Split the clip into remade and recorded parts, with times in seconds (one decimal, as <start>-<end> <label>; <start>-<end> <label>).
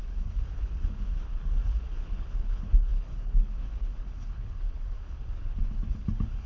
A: 0.0-6.5 remade